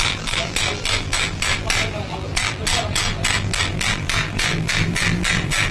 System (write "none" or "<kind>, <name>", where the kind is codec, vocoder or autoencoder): vocoder, BigVGAN v2